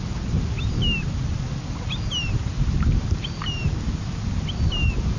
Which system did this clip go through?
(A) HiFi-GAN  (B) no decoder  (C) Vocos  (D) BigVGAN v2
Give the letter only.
B